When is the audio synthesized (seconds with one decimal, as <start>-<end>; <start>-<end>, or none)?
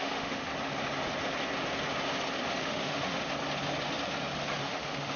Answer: 0.0-0.5; 2.6-3.2; 4.6-5.2